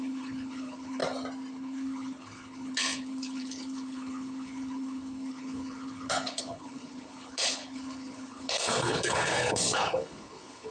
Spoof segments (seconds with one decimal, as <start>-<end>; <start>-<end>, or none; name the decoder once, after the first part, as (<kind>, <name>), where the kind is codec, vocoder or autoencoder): 0.0-1.0 (codec, HILCodec); 1.5-10.7